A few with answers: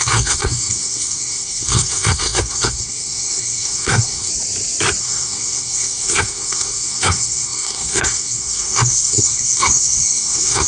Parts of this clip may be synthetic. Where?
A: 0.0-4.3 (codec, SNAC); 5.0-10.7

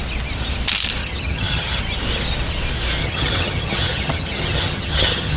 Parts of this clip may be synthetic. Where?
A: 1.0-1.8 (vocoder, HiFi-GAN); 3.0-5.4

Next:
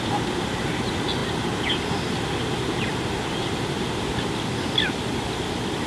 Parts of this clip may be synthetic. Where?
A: none

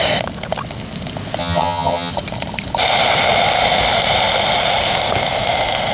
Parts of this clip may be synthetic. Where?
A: 1.4-2.1 (vocoder, HiFi-GAN)

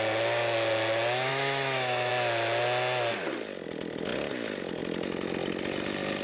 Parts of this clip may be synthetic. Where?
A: 1.3-2.1 (autoencoder, DAC-VAE)

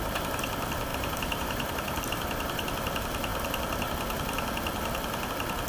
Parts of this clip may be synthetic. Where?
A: 0.9-2.0 (vocoder, BigVGAN v2)

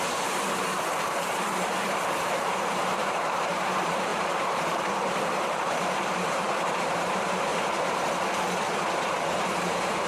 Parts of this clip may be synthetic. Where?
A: 0.0-7.5 (vocoder, BigVGAN v2); 9.0-10.1

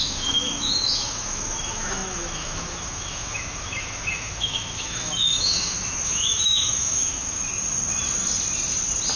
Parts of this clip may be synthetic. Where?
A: 0.0-7.4 (autoencoder, DAC-VAE)